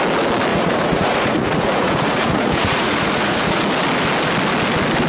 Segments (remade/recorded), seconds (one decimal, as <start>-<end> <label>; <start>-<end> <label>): 0.0-0.5 recorded; 0.5-3.6 remade; 3.6-5.1 recorded